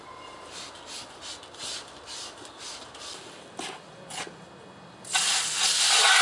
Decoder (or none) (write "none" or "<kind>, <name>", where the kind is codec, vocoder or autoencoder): none